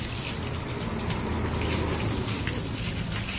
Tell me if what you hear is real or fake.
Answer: real